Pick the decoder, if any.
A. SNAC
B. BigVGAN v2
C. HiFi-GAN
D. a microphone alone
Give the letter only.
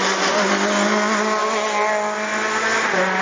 D